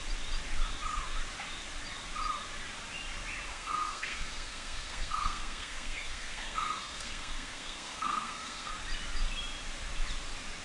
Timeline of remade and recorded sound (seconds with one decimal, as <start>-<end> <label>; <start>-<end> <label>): 0.0-3.5 recorded; 3.5-8.7 remade; 8.7-10.6 recorded